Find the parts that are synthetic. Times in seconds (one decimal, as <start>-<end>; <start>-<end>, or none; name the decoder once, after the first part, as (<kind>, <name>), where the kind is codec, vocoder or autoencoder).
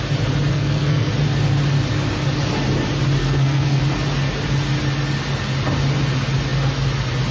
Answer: 0.5-1.1 (codec, SNAC); 3.2-3.8